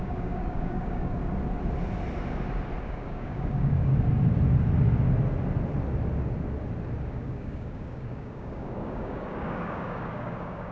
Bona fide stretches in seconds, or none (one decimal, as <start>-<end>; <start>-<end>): 1.2-2.8; 3.9-7.1